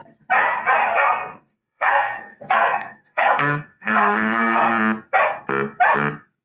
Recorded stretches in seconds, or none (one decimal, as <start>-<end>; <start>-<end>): 0.0-0.9; 4.7-6.4